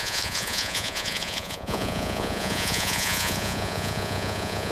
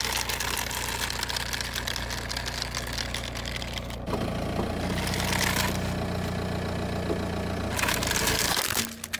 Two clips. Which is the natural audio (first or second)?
second